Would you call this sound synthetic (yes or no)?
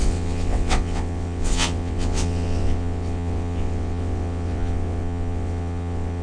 yes